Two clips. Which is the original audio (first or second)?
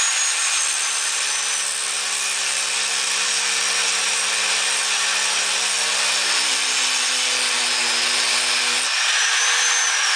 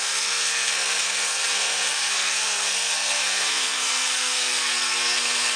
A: first